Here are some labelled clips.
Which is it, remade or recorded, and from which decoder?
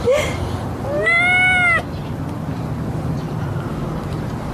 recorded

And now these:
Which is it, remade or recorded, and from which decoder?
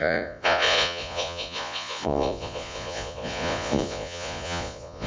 remade, vocoder, Vocos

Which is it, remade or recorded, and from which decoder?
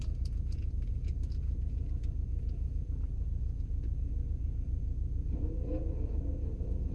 remade, vocoder, Vocos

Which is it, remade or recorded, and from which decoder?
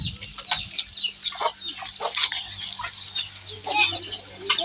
recorded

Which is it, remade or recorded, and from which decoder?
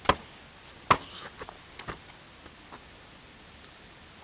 recorded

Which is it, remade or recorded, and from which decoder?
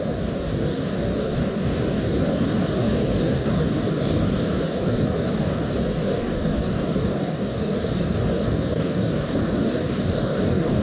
remade, codec, DAC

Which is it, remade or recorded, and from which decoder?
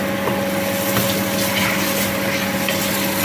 recorded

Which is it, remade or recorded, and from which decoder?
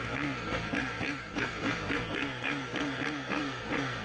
remade, codec, SNAC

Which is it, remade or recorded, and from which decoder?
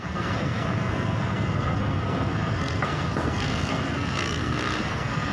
remade, codec, SNAC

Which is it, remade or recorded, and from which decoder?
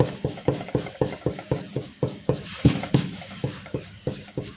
remade, codec, DAC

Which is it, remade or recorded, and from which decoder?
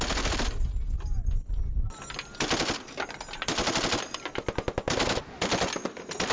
recorded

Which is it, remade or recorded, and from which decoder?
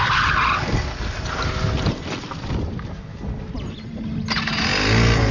recorded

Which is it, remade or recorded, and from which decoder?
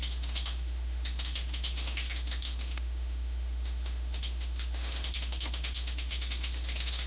remade, autoencoder, DAC-VAE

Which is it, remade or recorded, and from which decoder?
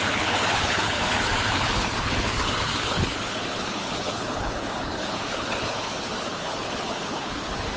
remade, codec, HILCodec